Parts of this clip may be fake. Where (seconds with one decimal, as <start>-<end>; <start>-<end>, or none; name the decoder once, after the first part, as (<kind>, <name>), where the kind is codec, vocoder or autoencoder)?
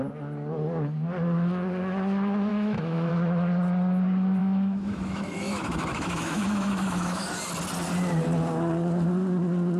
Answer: 2.5-3.1 (autoencoder, DAC-VAE); 4.4-7.3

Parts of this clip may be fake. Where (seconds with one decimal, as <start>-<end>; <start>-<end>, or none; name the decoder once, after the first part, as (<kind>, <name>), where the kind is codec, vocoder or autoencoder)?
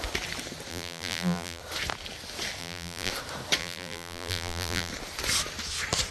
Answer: 0.7-1.6 (vocoder, BigVGAN v2); 2.6-3.1; 3.6-4.9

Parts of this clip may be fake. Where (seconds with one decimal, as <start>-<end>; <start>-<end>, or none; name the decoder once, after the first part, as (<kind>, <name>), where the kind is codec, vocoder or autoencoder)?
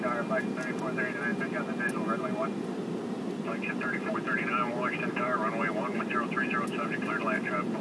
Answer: none